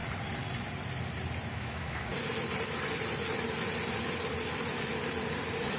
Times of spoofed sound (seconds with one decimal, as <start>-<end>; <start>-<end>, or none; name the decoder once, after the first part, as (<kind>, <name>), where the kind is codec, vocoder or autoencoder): 1.5-2.1 (autoencoder, DAC-VAE)